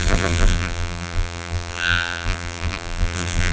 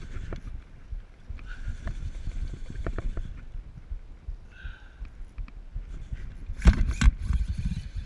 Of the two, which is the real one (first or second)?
second